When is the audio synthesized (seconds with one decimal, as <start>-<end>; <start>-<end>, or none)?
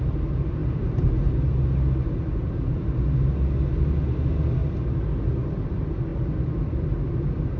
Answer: 0.6-1.3